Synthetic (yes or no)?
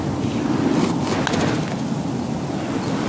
no